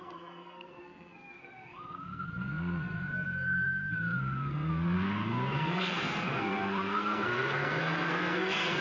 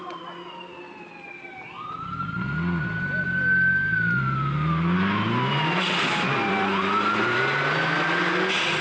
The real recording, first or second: second